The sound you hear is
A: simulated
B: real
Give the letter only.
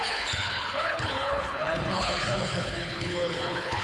A